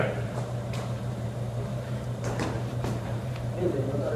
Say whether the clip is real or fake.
fake